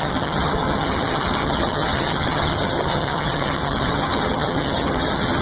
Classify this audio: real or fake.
fake